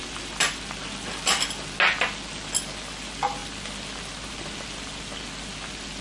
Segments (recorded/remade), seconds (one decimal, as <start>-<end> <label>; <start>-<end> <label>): 0.0-6.0 recorded